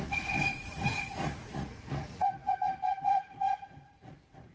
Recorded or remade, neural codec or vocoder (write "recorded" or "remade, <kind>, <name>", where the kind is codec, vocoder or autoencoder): remade, vocoder, Vocos